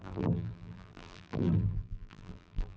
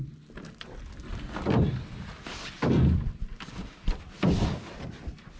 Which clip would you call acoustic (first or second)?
second